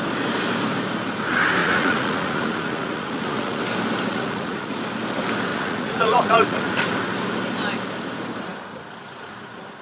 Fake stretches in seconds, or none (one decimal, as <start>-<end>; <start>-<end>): 1.6-3.6; 4.1-4.8; 5.5-6.7